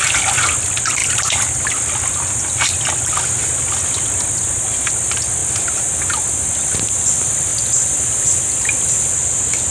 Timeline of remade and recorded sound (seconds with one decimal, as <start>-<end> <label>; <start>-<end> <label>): 0.0-9.7 recorded